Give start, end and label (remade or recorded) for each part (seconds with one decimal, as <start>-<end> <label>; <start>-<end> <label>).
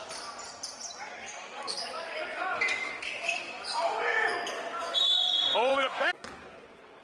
0.0-1.0 recorded; 1.0-5.0 remade; 5.0-5.7 recorded; 5.7-6.4 remade; 6.4-7.0 recorded